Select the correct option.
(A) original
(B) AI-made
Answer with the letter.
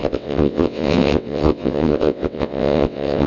B